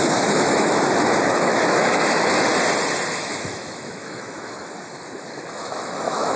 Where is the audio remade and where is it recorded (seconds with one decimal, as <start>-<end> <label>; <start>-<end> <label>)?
0.0-2.5 remade; 2.5-3.1 recorded; 3.1-6.4 remade